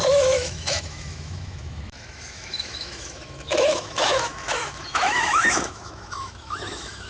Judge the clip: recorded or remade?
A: remade